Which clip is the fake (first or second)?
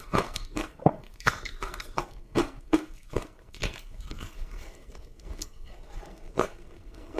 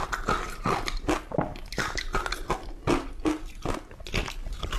first